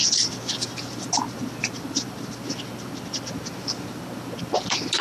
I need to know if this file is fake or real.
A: real